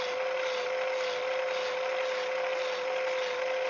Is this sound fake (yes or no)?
no